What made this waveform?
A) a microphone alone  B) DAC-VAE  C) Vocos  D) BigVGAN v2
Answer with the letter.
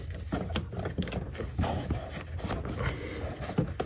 A